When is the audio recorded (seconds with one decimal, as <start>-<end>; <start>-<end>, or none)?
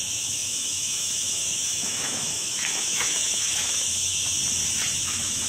4.4-5.0